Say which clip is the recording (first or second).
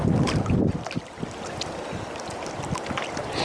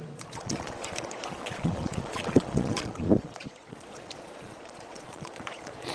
first